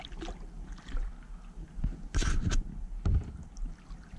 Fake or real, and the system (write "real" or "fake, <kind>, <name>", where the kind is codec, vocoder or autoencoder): real